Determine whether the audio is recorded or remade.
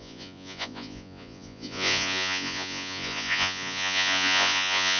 remade